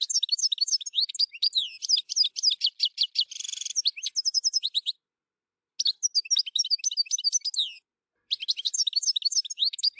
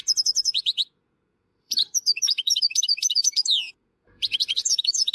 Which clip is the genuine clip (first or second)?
first